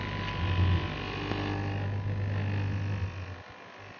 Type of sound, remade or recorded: recorded